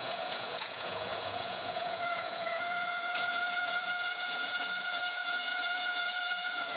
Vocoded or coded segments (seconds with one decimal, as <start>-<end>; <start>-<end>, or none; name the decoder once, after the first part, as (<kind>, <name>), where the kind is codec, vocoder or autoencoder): 0.0-6.8 (vocoder, Vocos)